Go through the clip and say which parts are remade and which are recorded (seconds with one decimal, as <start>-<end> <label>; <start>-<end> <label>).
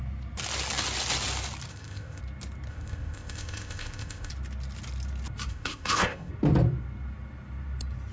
0.0-1.7 recorded; 1.7-2.2 remade; 2.2-2.7 recorded; 2.7-4.3 remade; 4.3-5.5 recorded; 5.5-6.3 remade; 6.3-8.1 recorded